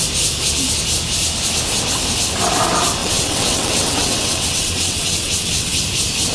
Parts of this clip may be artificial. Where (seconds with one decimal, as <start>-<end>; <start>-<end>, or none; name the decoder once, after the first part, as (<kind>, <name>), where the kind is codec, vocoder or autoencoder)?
3.0-5.8 (vocoder, WaveNeXt)